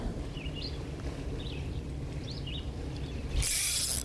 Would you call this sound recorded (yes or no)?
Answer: no